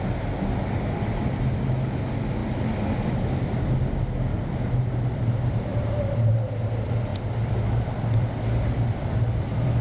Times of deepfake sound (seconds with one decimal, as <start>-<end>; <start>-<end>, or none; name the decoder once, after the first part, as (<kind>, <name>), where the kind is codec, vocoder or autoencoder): 2.4-3.1 (vocoder, BigVGAN v2); 5.7-6.3; 7.1-9.8